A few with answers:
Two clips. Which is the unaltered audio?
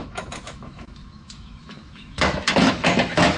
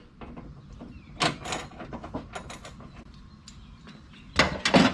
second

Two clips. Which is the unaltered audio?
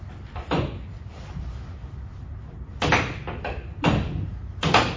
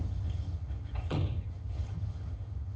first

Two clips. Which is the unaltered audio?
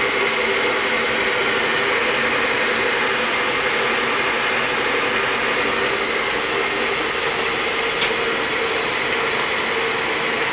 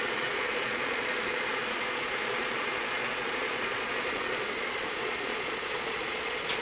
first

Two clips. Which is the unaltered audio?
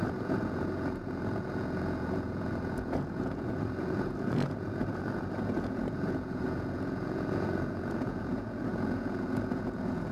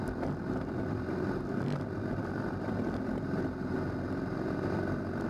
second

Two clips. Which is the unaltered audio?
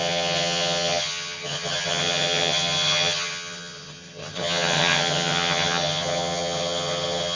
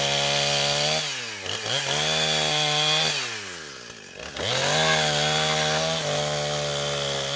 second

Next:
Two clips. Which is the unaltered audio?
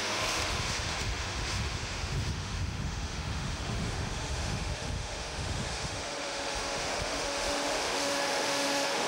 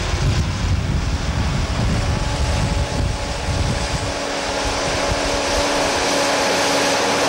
second